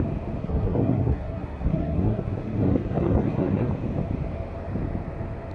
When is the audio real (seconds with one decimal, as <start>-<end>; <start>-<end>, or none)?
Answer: 0.0-0.4; 3.7-5.5

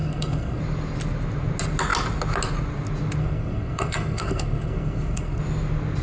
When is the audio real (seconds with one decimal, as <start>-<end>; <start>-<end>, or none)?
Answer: 0.6-3.2; 5.4-6.0

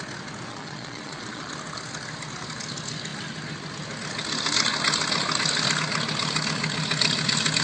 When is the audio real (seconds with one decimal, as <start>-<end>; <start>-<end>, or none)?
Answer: 0.0-0.5; 1.5-7.6

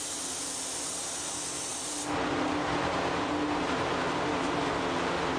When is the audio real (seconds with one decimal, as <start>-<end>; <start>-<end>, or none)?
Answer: 0.0-5.4

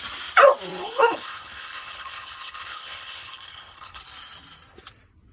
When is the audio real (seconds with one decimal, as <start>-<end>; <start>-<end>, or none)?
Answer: 0.0-0.8; 4.0-5.3